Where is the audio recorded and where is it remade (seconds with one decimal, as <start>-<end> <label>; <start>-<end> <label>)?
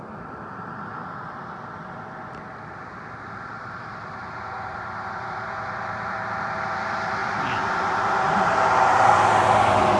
0.0-10.0 remade